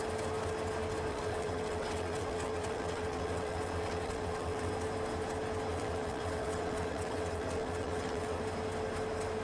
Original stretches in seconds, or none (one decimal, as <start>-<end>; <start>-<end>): 0.0-1.1; 4.7-5.7; 8.4-9.4